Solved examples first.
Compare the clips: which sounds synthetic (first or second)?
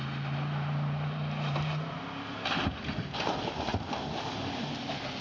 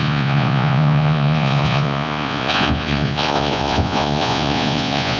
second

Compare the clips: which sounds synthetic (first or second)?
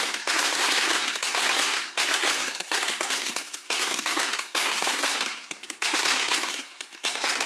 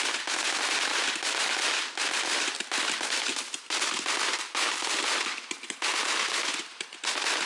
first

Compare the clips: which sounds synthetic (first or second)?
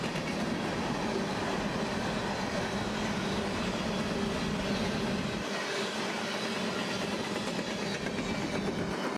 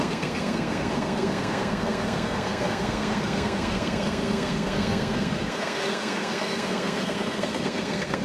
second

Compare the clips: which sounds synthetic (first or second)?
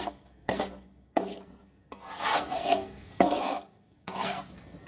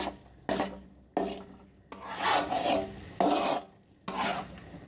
first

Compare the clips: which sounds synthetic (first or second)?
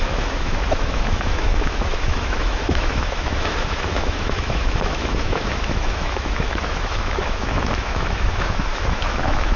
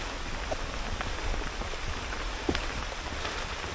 first